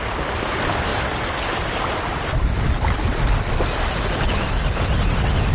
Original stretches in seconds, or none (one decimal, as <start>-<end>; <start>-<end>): 0.0-5.5